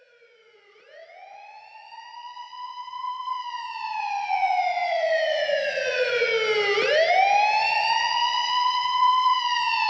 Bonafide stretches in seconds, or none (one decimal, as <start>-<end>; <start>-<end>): 6.3-7.6